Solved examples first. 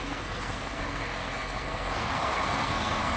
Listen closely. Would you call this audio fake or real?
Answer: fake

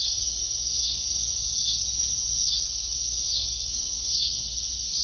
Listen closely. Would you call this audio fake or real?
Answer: fake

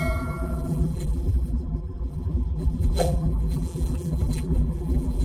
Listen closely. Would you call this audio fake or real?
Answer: fake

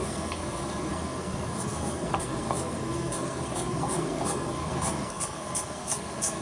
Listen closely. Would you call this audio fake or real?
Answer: fake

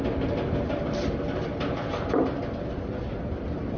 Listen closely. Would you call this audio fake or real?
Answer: real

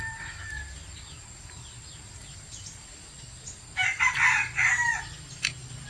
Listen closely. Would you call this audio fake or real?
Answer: real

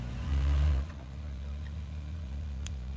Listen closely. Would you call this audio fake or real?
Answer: fake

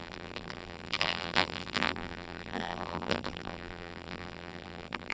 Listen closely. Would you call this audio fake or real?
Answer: fake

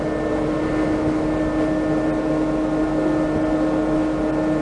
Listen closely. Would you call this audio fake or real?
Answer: real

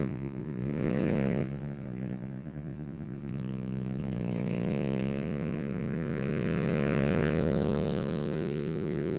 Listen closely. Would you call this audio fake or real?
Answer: fake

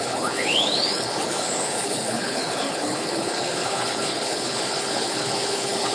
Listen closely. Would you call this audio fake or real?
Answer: fake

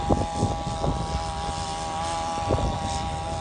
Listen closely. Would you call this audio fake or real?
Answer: real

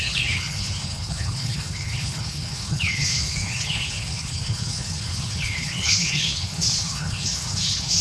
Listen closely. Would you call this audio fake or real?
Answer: fake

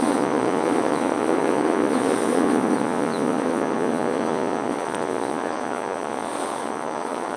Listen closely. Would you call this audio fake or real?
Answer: fake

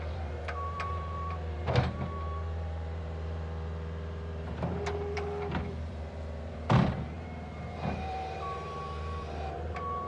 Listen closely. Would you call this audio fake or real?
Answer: fake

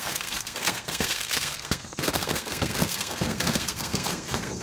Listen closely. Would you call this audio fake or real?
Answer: fake